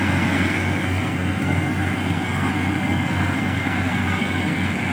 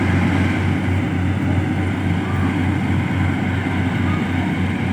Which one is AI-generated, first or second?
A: first